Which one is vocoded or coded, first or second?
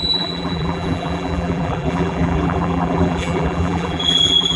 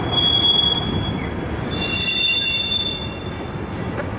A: first